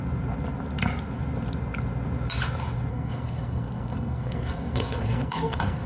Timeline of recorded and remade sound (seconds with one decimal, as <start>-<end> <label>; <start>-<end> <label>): 0.0-2.9 recorded; 2.9-5.9 remade